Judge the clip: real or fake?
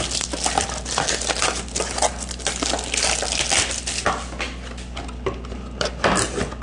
real